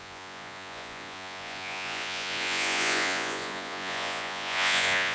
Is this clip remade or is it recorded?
remade